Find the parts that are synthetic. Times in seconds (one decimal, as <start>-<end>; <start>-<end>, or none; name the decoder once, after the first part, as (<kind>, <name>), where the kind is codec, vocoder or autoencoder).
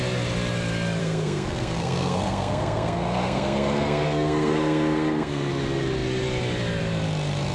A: 1.0-5.5 (codec, SNAC)